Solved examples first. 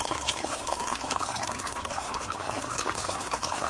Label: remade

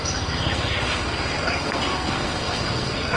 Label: remade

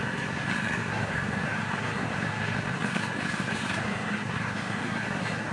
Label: remade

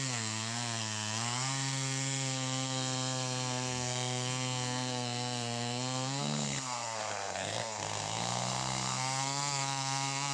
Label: remade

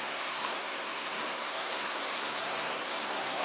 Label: remade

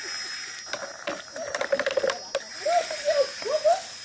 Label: recorded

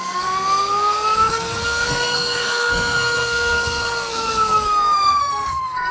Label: remade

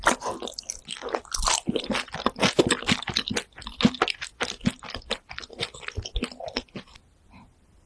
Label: recorded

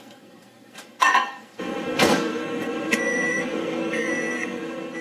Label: remade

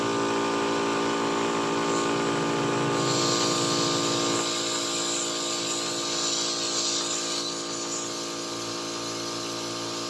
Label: recorded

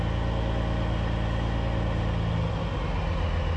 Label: recorded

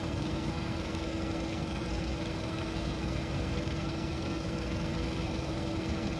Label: remade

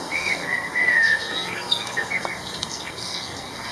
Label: remade